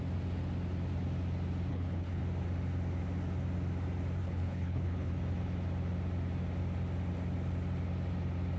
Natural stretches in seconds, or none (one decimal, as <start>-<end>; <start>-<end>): 0.0-1.7; 2.2-4.2; 5.1-8.6